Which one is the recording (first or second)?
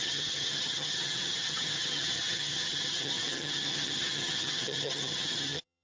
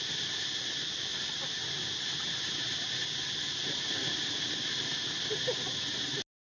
second